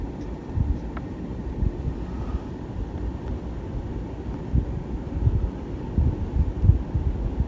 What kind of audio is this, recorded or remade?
recorded